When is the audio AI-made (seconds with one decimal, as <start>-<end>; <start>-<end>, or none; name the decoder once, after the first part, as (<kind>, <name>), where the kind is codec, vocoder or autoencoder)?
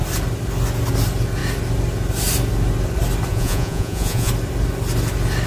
3.3-4.3 (vocoder, Vocos)